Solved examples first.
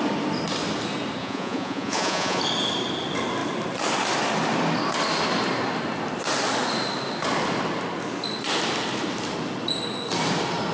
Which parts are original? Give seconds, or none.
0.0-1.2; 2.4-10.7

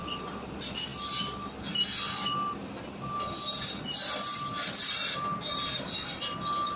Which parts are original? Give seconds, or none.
0.0-6.8